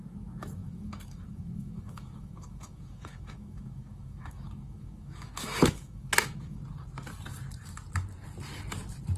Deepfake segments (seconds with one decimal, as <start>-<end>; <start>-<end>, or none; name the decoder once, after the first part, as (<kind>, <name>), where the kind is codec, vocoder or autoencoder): 0.0-6.6 (autoencoder, DAC-VAE)